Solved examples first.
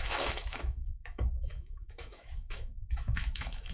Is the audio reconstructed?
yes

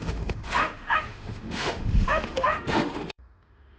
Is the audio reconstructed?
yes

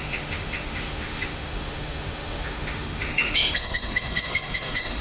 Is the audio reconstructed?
yes